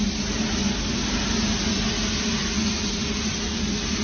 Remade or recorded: recorded